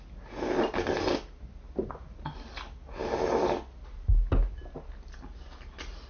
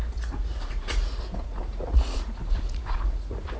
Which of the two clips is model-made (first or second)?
second